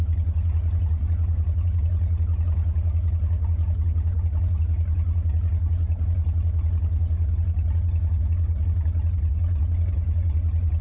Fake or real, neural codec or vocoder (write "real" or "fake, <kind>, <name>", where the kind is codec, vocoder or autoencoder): real